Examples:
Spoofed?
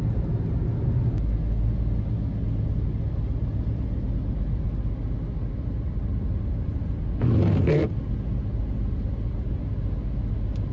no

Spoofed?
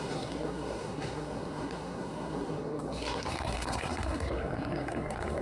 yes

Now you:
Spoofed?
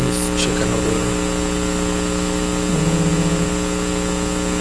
no